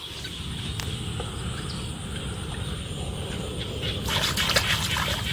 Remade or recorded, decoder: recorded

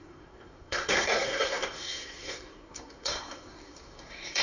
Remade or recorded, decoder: remade, codec, SNAC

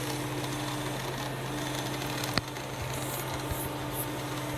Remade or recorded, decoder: recorded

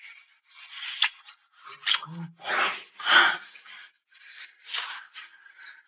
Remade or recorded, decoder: recorded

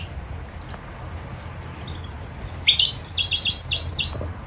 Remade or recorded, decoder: recorded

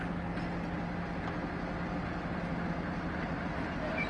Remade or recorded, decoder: recorded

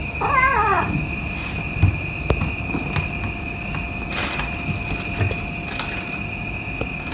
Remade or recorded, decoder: recorded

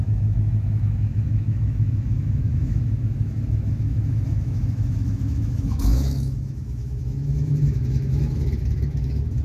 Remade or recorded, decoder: remade, autoencoder, DAC-VAE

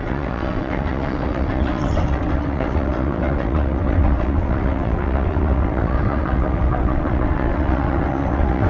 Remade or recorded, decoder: remade, vocoder, WaveNeXt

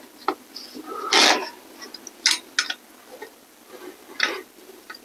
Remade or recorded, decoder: recorded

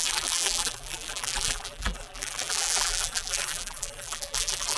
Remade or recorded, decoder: remade, vocoder, BigVGAN v2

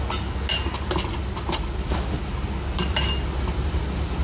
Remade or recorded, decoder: recorded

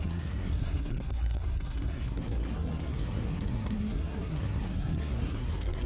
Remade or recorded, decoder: remade, codec, SNAC